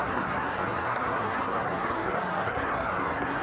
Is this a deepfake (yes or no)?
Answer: yes